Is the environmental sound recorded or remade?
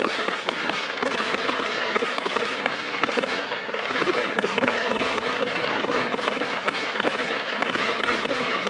remade